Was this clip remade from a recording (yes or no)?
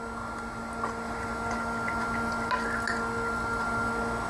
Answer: no